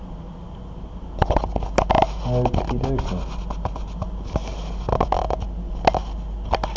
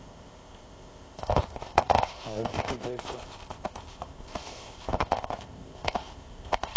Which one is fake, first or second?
second